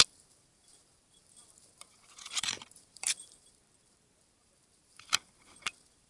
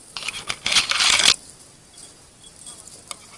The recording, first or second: second